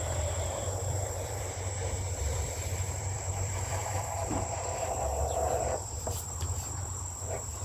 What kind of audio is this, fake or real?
fake